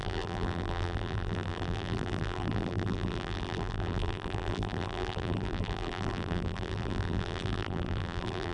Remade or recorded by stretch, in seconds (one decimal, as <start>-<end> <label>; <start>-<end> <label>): 0.0-8.5 remade